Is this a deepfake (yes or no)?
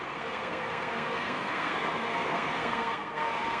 yes